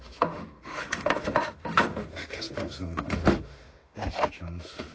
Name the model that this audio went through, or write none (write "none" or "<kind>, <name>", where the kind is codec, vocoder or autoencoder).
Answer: autoencoder, DAC-VAE